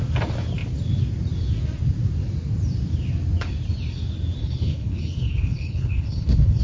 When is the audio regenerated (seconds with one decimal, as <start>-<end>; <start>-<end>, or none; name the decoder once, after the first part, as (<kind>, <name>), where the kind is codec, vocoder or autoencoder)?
4.4-6.6 (codec, HILCodec)